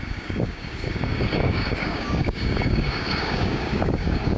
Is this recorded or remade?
remade